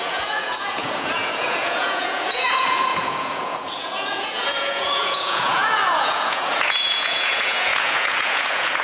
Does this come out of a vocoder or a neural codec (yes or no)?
yes